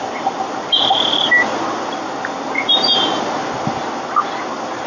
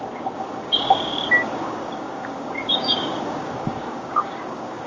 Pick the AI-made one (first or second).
second